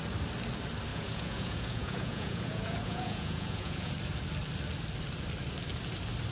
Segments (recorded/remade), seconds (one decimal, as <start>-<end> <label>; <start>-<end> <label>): 0.0-0.9 recorded; 0.9-3.9 remade; 3.9-6.3 recorded